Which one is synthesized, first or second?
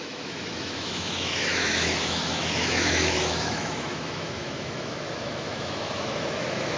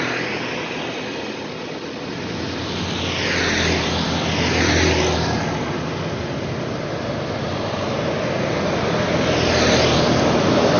first